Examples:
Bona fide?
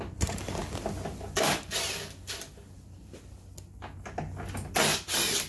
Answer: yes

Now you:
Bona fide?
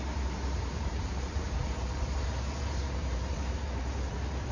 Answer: no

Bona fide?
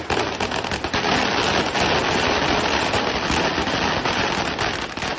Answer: yes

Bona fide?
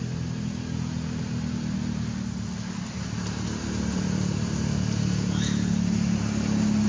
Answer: yes